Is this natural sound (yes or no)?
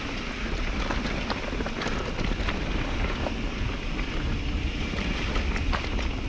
yes